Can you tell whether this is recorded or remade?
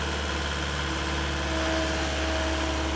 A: recorded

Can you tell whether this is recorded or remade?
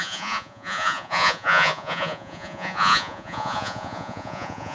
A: remade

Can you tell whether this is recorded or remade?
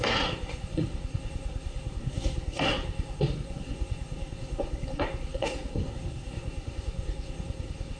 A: remade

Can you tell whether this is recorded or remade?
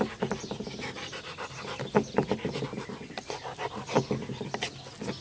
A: recorded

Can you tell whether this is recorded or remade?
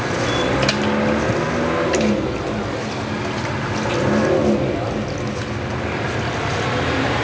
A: recorded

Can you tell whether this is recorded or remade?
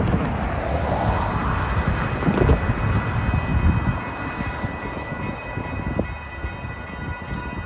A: recorded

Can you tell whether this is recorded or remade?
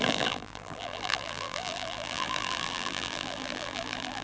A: remade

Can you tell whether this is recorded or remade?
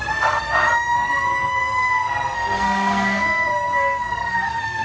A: remade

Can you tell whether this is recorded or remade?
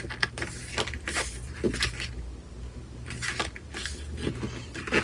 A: recorded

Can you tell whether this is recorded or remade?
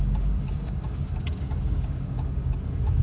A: remade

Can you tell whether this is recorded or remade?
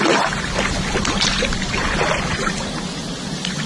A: recorded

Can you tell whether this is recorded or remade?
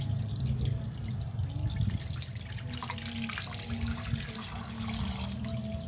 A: recorded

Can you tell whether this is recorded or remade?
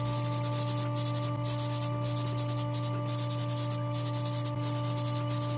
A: recorded